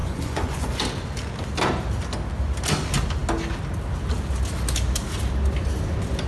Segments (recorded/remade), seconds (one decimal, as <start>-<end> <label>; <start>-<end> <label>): 0.0-0.8 remade; 0.8-6.3 recorded